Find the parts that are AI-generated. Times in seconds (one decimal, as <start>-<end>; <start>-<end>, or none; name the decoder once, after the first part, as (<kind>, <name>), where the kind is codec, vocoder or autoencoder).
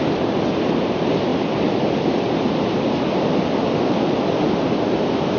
1.3-4.5 (vocoder, BigVGAN v2)